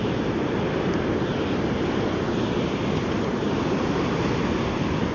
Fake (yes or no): no